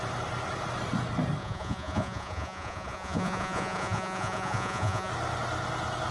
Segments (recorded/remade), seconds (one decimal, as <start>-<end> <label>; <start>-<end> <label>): 0.0-1.4 recorded; 1.4-5.1 remade; 5.1-6.1 recorded